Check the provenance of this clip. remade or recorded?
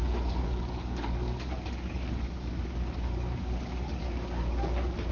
remade